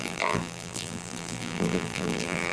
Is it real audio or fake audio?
fake